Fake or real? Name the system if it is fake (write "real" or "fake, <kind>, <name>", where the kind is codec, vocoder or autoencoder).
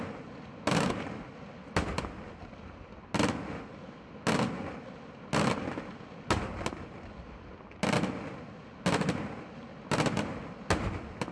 real